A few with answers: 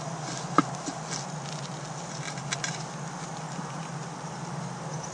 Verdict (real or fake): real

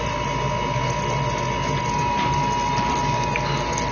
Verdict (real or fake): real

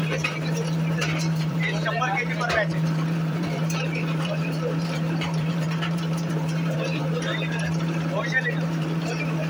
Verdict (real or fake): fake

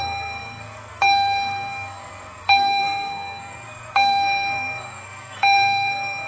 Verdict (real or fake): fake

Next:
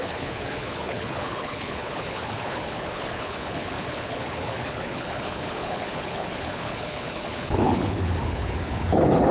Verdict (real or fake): fake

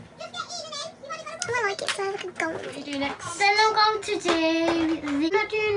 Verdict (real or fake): real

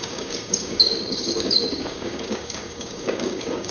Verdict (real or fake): fake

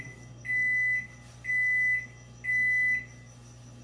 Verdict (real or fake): real